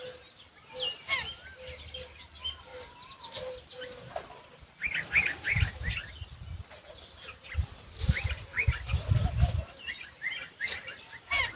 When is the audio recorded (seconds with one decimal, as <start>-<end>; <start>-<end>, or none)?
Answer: 0.0-11.6